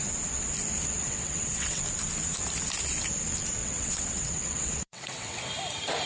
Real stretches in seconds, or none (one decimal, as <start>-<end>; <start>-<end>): 0.0-1.0; 1.8-3.6; 5.4-6.1